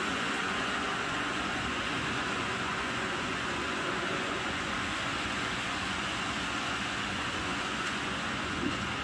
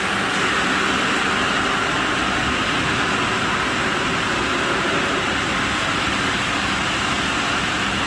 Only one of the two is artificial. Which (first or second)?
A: first